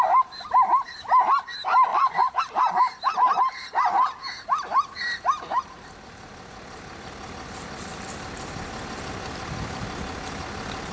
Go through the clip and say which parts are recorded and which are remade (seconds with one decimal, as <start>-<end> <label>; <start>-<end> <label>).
0.0-1.9 recorded; 1.9-2.4 remade; 2.4-10.9 recorded